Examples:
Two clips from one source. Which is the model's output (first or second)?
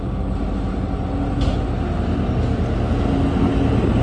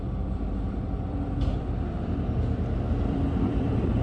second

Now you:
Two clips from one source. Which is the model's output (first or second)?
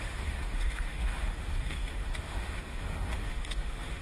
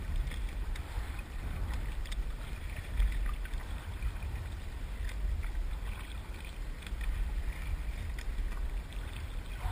first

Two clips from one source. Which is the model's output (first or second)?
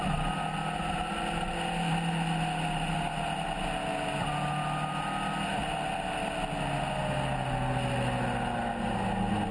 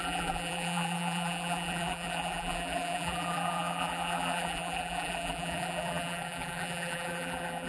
second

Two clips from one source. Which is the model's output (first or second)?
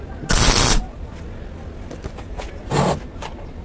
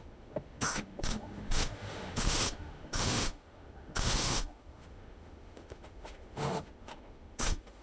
second